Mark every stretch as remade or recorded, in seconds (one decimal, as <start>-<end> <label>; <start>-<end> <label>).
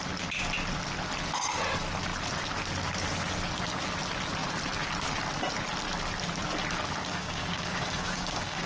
0.0-7.1 recorded; 7.1-8.7 remade